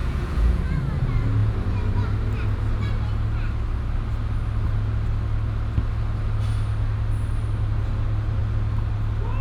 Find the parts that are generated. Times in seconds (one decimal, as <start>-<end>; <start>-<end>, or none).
0.0-0.6